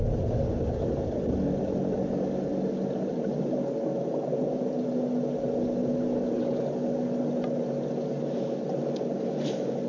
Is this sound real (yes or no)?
yes